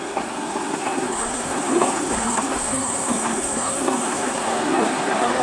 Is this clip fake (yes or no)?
yes